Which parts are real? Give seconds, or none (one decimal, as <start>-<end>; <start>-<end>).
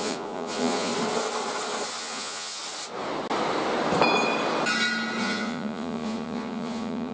0.9-2.0; 2.6-5.2